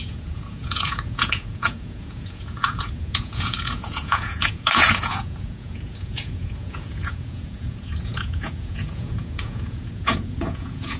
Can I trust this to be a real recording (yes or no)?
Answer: no